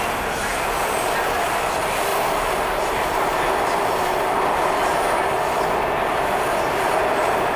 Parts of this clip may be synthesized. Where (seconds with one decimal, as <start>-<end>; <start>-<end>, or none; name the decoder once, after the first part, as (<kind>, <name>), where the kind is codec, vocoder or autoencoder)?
0.5-1.7 (vocoder, BigVGAN v2); 2.1-6.6